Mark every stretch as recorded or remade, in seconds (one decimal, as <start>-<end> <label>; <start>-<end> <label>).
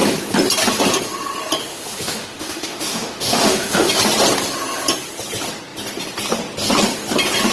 0.0-1.6 recorded; 1.6-3.9 remade; 3.9-7.5 recorded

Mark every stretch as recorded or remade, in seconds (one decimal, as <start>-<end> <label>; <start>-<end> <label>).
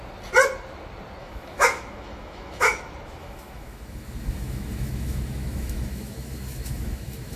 0.0-1.2 recorded; 1.2-2.8 remade; 2.8-3.2 recorded; 3.2-7.4 remade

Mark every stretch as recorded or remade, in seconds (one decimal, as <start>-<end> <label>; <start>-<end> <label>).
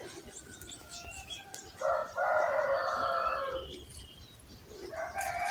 0.0-0.8 recorded; 0.8-1.4 remade; 1.4-5.5 recorded